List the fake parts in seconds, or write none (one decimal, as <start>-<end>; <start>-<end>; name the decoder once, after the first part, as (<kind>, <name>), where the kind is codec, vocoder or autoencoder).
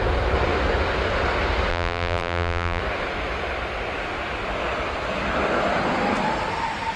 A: 1.7-2.8 (vocoder, BigVGAN v2)